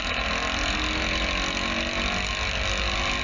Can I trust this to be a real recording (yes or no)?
yes